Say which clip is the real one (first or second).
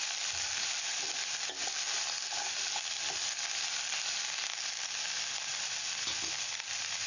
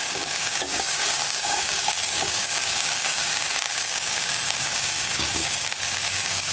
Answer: first